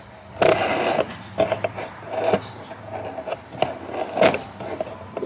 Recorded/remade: recorded